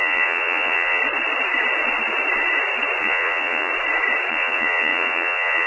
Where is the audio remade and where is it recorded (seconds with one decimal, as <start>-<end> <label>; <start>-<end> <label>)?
0.0-1.0 remade; 1.0-3.0 recorded; 3.0-3.7 remade; 3.7-4.3 recorded; 4.3-5.7 remade